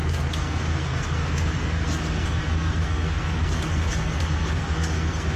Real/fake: fake